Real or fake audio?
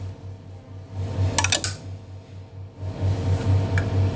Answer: real